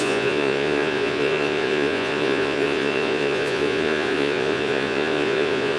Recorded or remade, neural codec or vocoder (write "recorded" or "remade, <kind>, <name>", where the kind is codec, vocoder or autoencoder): remade, vocoder, Vocos